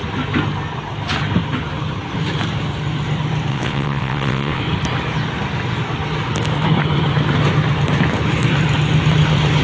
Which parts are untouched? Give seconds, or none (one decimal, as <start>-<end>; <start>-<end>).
0.0-3.5; 4.6-9.6

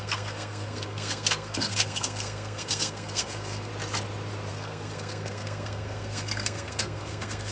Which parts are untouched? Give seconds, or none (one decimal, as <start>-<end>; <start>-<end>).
3.7-4.5

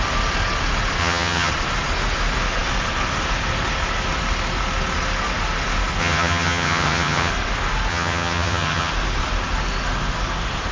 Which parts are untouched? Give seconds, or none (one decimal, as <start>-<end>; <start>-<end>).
0.0-1.0; 1.5-6.0; 7.3-7.9; 8.9-10.7

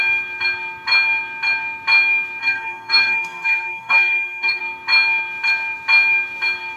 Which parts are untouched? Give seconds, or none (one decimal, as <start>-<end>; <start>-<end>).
0.0-2.4; 4.6-6.8

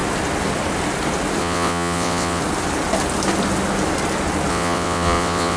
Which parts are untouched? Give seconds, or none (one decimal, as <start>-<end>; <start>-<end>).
0.0-1.4; 2.4-4.5

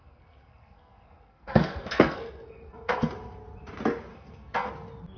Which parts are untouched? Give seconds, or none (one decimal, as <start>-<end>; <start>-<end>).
3.1-4.1; 4.7-5.2